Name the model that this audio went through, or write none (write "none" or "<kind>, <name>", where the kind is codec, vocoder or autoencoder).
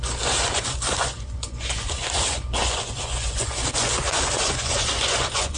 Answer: vocoder, Vocos